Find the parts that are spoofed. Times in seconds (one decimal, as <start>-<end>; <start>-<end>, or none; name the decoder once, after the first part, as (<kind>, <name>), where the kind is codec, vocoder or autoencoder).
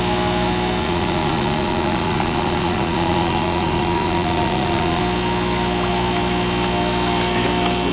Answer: 0.8-5.0 (vocoder, Vocos)